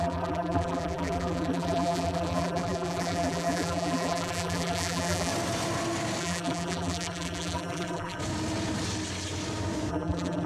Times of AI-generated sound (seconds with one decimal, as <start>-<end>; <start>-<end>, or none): 0.0-5.3; 6.2-8.2; 9.9-10.5